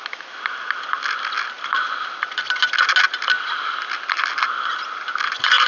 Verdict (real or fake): real